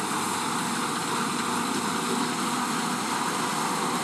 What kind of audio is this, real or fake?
real